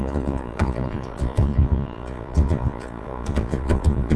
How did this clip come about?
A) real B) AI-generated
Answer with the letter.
B